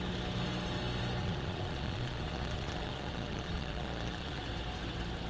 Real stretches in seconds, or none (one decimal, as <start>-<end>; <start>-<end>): 0.0-1.2; 4.4-5.3